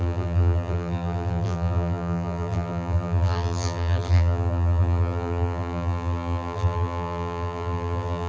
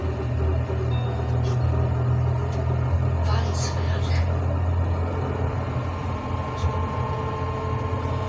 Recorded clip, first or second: second